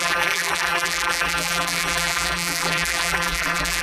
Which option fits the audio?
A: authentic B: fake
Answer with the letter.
B